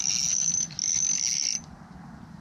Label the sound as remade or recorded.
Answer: recorded